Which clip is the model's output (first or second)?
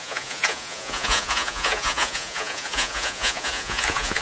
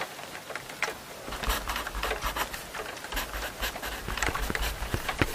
first